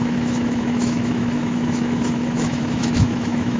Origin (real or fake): fake